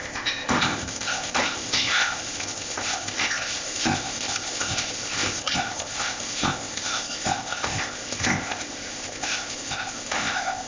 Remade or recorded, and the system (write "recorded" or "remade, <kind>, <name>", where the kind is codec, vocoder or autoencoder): remade, codec, ZipCodec